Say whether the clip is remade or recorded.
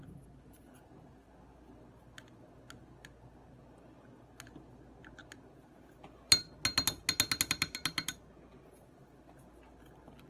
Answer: recorded